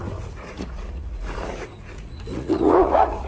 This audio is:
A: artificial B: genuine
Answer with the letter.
A